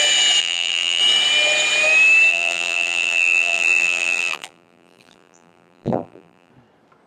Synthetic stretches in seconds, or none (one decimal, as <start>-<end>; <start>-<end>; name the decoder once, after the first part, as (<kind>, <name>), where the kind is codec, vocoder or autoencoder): 0.4-1.0 (vocoder, BigVGAN v2); 2.3-6.5